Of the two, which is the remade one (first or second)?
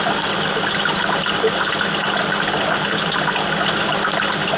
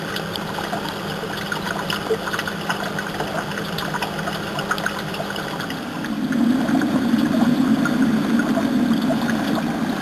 second